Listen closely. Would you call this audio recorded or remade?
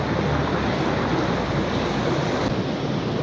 recorded